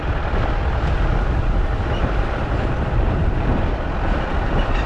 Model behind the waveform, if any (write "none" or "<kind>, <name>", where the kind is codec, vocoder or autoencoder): vocoder, BigVGAN v2